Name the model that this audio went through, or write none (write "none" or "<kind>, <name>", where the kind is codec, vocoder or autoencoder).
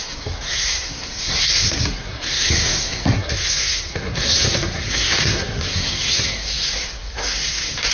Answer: codec, SNAC